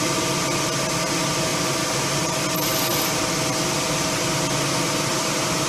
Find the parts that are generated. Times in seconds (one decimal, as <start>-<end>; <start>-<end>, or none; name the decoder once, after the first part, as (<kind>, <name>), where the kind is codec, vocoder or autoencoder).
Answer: 1.5-2.3 (vocoder, BigVGAN v2); 5.1-5.7